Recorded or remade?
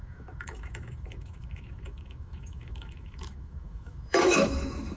remade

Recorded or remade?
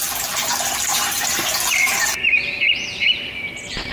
recorded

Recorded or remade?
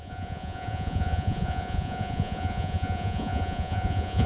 remade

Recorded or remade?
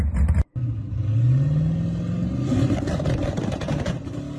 recorded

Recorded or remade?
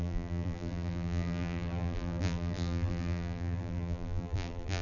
remade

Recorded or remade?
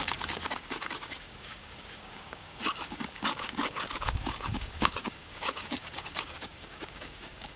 remade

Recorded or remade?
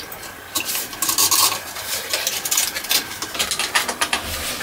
recorded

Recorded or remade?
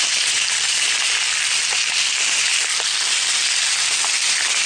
recorded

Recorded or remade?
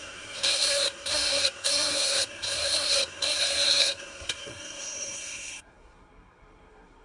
remade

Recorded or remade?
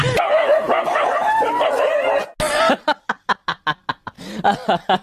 recorded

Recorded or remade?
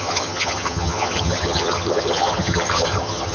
remade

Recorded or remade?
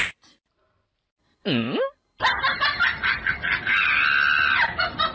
recorded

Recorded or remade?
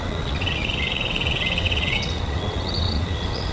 remade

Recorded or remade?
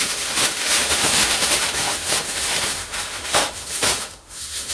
remade